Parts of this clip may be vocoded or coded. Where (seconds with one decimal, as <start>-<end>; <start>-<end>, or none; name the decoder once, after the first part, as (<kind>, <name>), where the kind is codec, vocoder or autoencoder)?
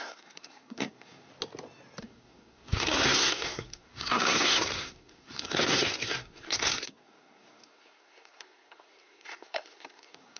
0.0-1.3 (codec, SNAC); 2.0-10.4